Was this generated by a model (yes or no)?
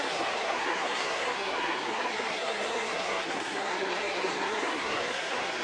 yes